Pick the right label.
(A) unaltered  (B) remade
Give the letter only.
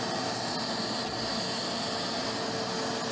A